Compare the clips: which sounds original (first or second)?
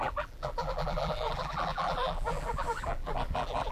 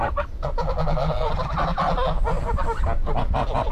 second